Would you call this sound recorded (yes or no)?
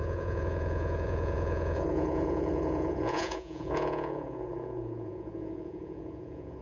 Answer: no